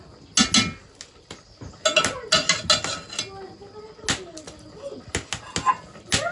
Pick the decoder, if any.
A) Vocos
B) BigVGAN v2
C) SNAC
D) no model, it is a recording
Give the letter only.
D